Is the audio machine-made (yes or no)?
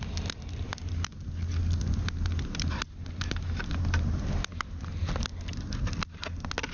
no